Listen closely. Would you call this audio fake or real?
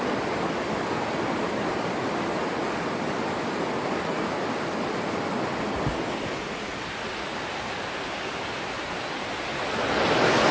real